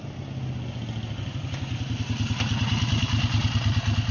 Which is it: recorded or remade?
recorded